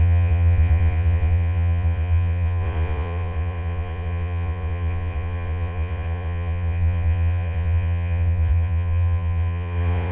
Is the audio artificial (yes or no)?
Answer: yes